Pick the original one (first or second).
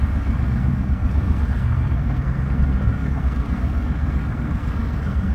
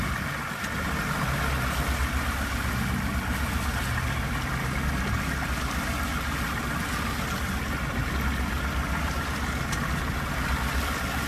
second